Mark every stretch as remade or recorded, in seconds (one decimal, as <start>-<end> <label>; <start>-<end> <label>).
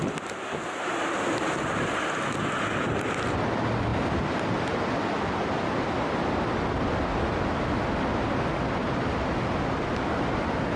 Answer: 0.0-10.8 recorded